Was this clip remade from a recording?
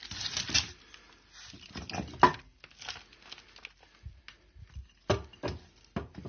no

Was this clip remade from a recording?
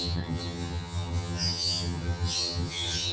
yes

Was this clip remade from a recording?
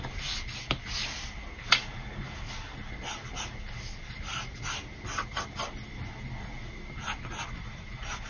no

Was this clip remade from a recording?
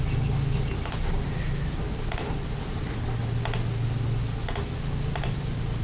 no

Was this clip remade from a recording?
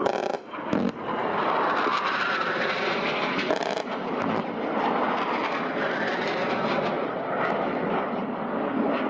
no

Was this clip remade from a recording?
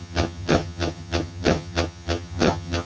yes